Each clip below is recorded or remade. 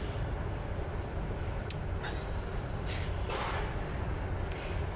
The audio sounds recorded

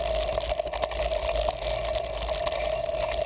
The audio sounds recorded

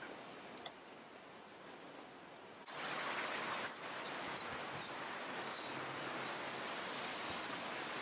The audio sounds recorded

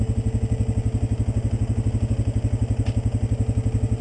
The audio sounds recorded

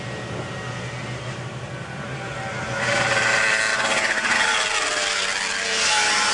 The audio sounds recorded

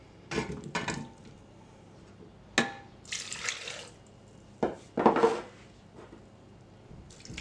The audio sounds recorded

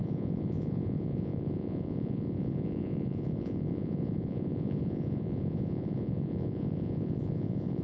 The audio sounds remade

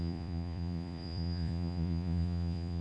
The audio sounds remade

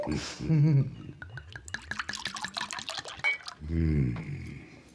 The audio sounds recorded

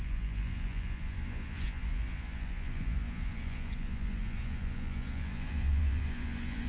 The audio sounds remade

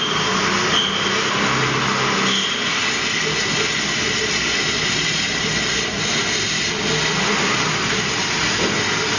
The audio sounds recorded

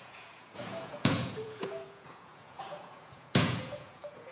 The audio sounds remade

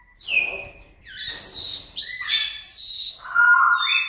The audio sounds recorded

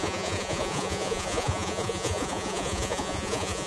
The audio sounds remade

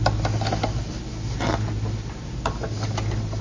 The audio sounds recorded